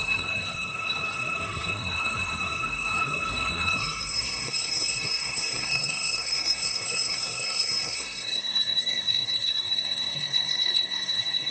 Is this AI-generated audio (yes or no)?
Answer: yes